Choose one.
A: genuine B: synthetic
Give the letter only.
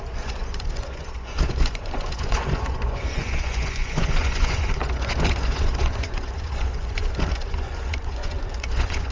B